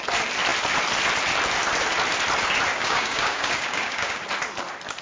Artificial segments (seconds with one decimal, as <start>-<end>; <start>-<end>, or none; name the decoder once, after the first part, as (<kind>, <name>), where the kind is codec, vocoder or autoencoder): 2.7-4.2 (codec, DAC)